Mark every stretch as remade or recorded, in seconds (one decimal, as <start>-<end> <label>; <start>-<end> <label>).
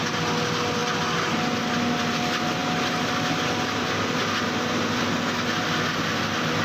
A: 0.0-6.6 recorded